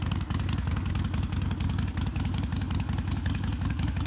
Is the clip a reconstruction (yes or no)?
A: yes